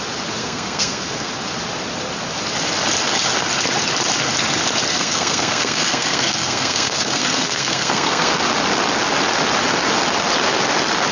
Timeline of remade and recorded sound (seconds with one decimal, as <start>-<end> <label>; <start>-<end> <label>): 0.0-0.4 recorded; 0.4-1.3 remade; 1.3-4.9 recorded; 4.9-8.4 remade; 8.4-11.1 recorded